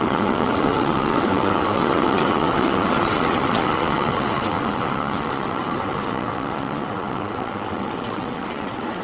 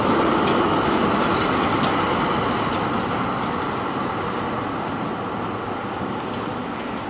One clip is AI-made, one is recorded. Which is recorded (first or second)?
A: second